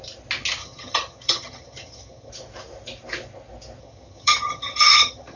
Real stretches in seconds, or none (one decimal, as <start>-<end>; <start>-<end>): 0.0-0.6; 2.3-3.8